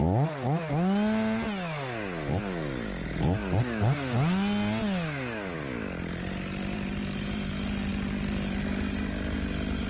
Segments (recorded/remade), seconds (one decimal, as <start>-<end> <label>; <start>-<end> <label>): 0.0-9.9 recorded